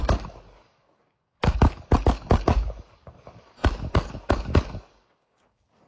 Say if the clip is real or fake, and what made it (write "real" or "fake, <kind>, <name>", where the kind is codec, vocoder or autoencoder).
fake, codec, DAC